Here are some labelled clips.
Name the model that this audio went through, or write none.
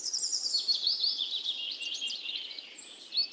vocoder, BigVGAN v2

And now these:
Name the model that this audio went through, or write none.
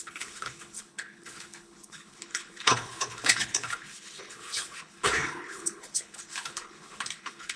codec, HILCodec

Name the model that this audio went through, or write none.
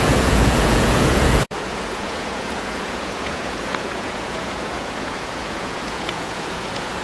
vocoder, Vocos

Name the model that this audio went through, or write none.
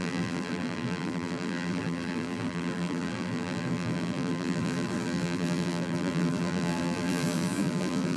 vocoder, BigVGAN v2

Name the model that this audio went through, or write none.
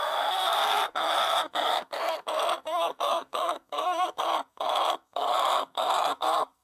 codec, SNAC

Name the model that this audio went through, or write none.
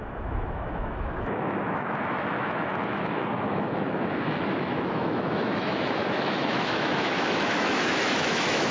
autoencoder, DAC-VAE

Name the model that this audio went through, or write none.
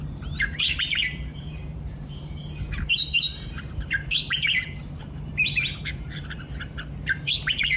vocoder, BigVGAN v2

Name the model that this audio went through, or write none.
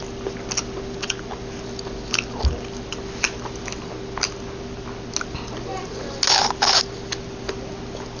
none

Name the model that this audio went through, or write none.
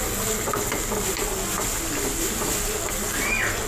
none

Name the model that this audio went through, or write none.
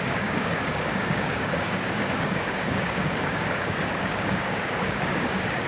codec, DAC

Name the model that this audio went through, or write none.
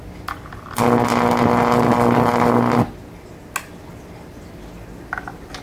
none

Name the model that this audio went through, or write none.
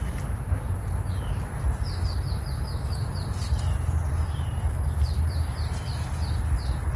none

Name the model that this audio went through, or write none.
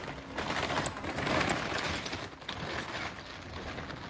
none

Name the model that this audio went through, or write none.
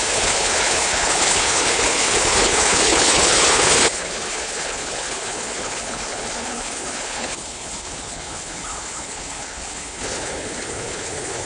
codec, HILCodec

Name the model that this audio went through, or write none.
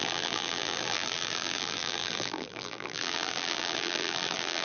vocoder, BigVGAN v2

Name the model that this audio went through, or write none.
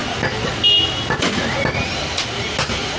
none